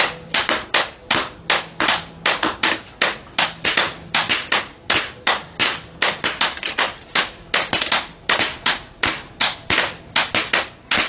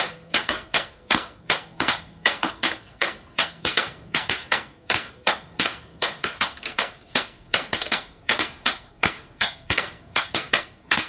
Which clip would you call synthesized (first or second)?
second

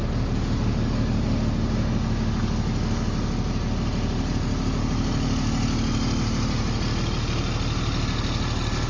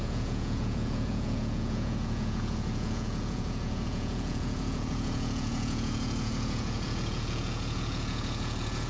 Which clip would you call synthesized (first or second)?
second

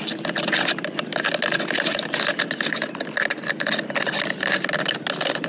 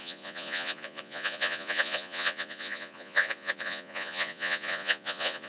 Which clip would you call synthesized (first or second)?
second